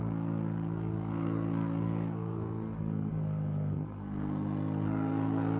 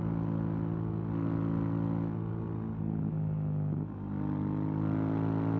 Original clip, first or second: second